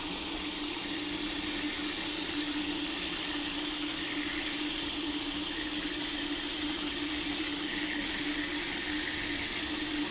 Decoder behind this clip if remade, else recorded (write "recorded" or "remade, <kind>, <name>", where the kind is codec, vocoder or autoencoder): recorded